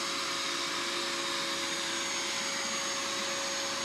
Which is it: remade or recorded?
recorded